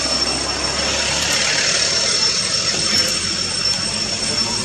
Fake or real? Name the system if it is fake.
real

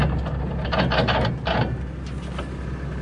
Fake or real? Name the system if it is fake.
real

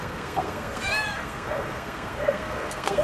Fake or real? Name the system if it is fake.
fake, codec, SNAC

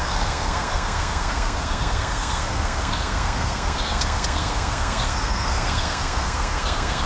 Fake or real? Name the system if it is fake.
fake, codec, SNAC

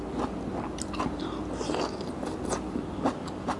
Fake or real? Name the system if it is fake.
real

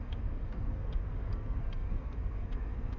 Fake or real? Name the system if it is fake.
fake, codec, SNAC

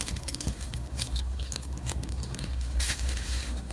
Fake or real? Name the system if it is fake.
fake, codec, SNAC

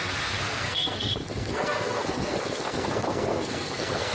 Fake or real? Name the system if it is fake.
fake, codec, SNAC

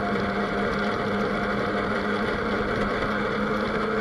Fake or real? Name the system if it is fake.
real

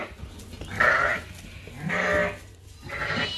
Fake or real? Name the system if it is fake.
real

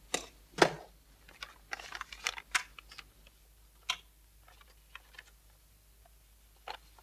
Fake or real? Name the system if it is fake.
real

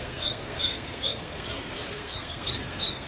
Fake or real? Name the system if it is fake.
fake, codec, SNAC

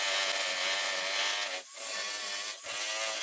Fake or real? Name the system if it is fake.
real